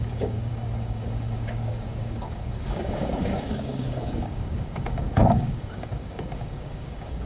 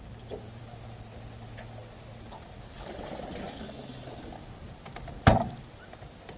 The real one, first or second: second